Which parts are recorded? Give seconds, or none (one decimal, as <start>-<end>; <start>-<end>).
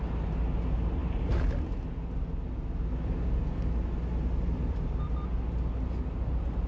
0.0-6.7